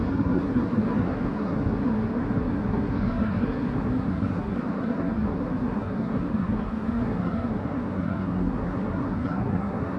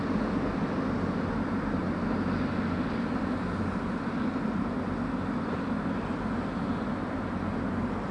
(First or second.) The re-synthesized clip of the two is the first